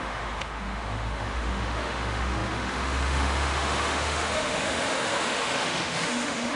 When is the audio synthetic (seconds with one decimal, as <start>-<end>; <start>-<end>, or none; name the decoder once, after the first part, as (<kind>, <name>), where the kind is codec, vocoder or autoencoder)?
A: 0.0-6.6 (autoencoder, DAC-VAE)